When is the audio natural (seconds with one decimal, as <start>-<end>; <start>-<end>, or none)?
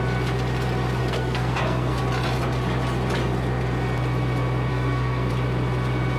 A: 0.0-1.0; 2.0-4.7; 5.3-6.2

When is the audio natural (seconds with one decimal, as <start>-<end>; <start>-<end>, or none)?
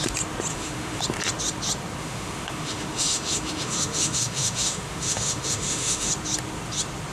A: 0.0-0.5; 1.0-2.0; 6.1-7.1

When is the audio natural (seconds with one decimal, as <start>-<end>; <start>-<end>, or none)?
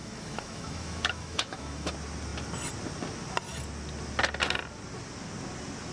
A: 1.9-5.9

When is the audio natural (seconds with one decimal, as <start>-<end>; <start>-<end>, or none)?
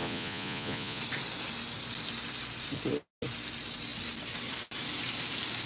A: 1.0-5.7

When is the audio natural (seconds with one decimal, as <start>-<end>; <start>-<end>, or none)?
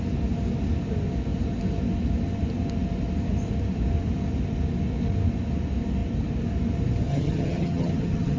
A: 0.0-7.1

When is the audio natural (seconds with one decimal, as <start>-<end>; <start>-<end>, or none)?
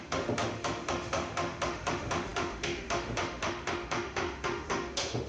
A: none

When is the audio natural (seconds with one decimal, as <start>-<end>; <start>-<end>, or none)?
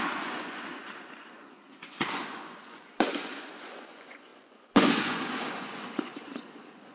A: none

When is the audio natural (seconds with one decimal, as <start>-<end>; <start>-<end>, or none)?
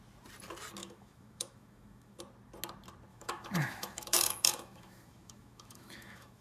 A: 0.0-0.8; 2.2-3.1